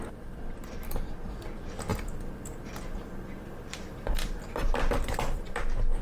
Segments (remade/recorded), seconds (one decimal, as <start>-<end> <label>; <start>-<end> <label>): 0.0-1.9 recorded; 1.9-5.5 remade; 5.5-6.0 recorded